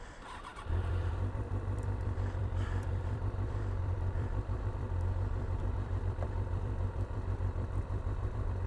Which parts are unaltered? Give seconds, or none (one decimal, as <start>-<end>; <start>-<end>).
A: none